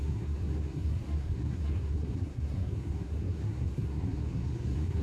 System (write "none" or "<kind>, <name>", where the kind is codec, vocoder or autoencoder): codec, SNAC